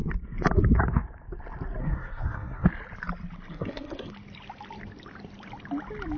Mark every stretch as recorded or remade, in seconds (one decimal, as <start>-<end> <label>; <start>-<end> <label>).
0.0-1.8 recorded; 1.8-2.7 remade; 2.7-3.5 recorded; 3.5-4.1 remade; 4.1-6.2 recorded